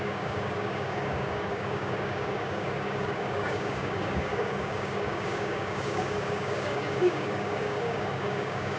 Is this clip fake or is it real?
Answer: fake